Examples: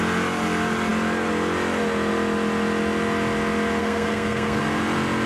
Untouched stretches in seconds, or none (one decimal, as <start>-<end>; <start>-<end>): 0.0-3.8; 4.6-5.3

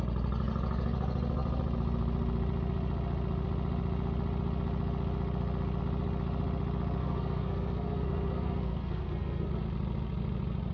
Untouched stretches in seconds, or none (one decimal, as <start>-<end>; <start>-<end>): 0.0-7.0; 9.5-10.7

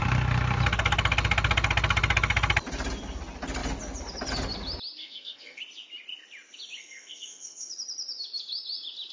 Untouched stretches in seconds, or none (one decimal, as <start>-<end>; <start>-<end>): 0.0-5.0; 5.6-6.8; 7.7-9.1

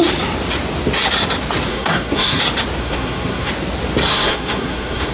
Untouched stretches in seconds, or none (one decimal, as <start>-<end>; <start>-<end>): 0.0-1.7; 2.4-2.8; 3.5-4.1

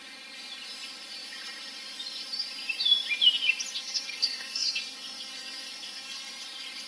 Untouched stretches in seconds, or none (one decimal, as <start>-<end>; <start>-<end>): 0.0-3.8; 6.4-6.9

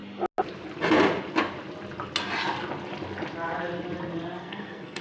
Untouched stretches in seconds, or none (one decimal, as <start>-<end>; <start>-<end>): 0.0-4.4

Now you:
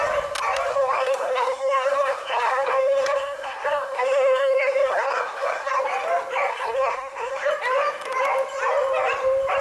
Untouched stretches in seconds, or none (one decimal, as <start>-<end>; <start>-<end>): 0.0-0.7; 5.8-6.5; 7.5-9.6

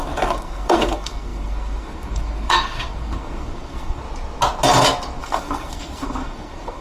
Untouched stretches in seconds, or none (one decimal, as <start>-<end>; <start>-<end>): 4.0-5.2